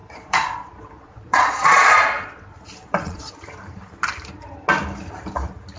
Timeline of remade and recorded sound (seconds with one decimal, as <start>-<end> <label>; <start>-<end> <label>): 0.0-3.3 remade; 3.3-5.8 recorded